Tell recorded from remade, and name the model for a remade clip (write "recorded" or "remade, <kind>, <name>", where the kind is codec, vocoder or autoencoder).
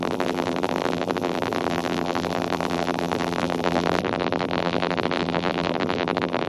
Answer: remade, vocoder, BigVGAN v2